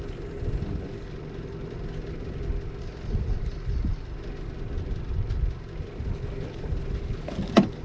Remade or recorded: recorded